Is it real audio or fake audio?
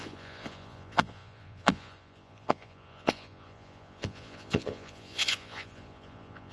fake